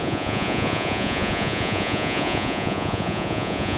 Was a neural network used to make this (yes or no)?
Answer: yes